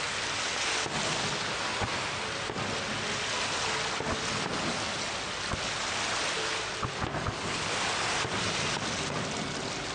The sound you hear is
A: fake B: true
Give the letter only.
B